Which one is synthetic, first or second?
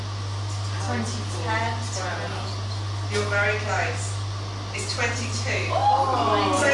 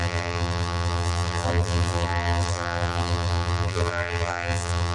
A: second